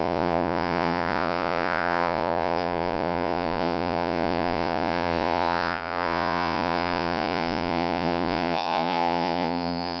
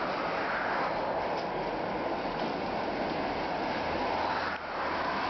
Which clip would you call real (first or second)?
second